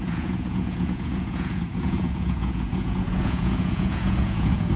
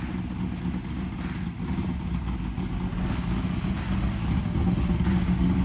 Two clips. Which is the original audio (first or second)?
second